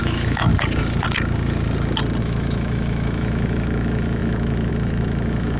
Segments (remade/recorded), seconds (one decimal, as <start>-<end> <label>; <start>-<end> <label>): 0.0-0.5 remade; 0.5-2.2 recorded; 2.2-5.6 remade